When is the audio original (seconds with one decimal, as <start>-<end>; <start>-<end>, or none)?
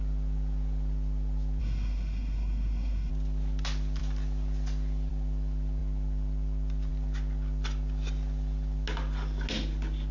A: 0.0-1.6; 3.1-10.1